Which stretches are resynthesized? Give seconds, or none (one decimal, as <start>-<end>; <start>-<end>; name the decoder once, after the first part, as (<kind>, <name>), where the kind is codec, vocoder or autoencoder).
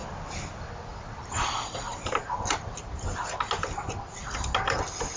none